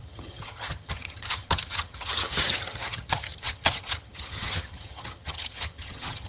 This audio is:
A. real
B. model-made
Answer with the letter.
B